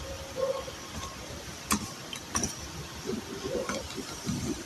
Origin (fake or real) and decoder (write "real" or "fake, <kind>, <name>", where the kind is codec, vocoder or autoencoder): fake, vocoder, BigVGAN v2